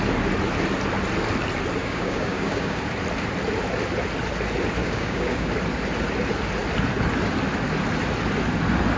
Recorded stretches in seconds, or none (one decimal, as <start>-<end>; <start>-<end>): 0.0-1.8; 2.8-4.8; 5.5-9.0